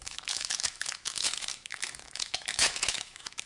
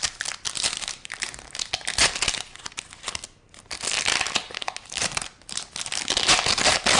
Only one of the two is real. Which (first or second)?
second